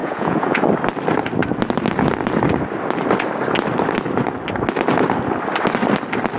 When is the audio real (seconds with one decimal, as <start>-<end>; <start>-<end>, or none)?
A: 0.6-6.4

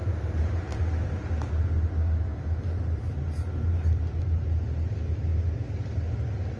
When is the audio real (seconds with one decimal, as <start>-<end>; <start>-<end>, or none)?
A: 0.0-6.6

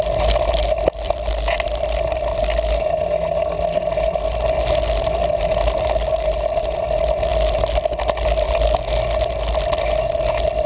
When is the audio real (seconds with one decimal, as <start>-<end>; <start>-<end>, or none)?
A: 0.0-10.7

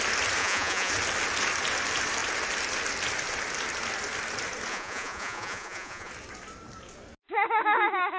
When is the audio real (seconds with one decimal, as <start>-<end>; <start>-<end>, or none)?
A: 0.0-0.4; 0.9-4.7; 6.1-8.2

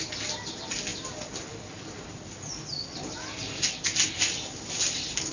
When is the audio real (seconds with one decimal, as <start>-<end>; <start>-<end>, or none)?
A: 0.0-5.3

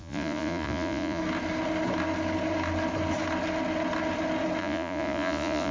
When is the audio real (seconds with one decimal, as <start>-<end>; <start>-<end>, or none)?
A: 1.2-4.6

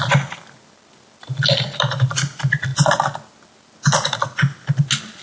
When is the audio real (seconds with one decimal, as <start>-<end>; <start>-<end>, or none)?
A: 0.0-5.2

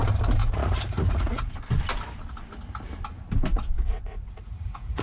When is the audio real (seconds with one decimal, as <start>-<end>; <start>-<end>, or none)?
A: 0.0-0.4; 1.5-3.5